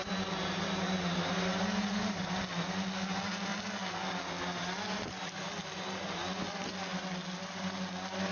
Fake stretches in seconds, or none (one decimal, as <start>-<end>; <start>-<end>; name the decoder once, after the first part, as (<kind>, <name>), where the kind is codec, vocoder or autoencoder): none